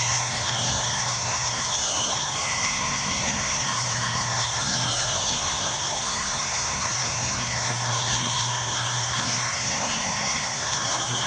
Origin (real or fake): fake